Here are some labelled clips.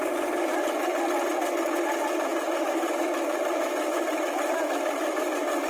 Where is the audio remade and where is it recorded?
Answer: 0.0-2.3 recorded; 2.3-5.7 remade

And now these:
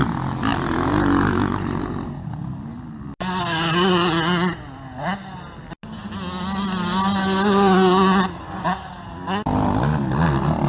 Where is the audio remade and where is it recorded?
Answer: 0.0-0.5 recorded; 0.5-2.3 remade; 2.3-10.7 recorded

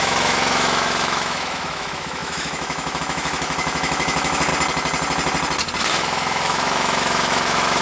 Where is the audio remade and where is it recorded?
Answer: 0.0-4.5 remade; 4.5-5.8 recorded; 5.8-7.8 remade

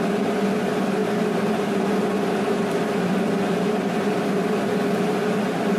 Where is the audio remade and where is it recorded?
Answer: 0.0-5.8 recorded